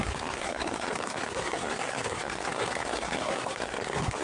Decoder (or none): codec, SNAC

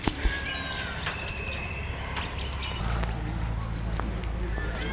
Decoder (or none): none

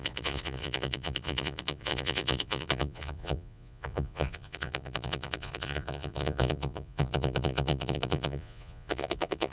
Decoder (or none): vocoder, Vocos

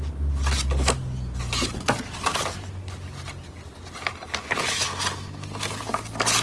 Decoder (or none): none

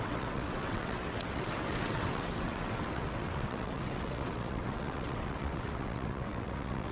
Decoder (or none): vocoder, WaveNeXt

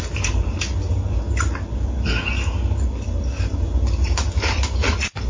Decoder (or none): none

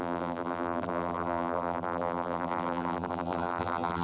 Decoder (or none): vocoder, BigVGAN v2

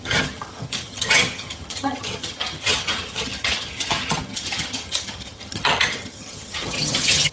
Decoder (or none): vocoder, HiFi-GAN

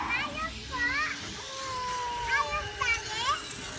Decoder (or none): none